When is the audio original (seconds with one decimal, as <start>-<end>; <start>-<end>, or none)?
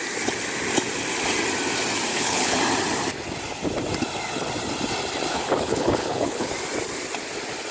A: 0.0-2.1; 2.6-5.3; 6.5-7.7